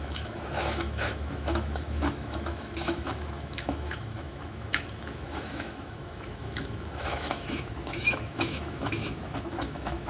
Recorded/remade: remade